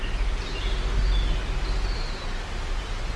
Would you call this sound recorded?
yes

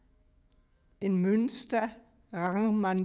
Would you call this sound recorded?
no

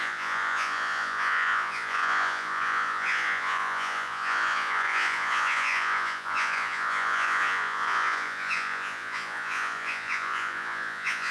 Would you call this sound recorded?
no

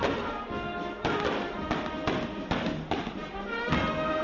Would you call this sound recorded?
yes